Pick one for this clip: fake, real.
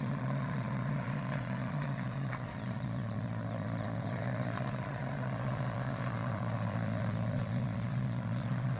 fake